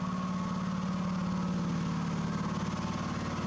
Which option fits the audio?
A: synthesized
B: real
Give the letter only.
B